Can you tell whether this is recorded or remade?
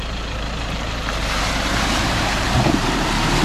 remade